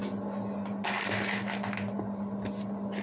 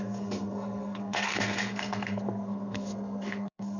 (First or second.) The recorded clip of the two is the first